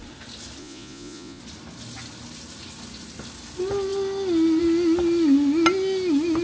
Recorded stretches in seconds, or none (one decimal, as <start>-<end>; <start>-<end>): 0.0-0.6; 1.4-6.4